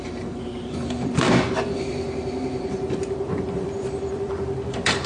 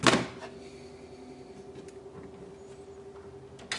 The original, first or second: second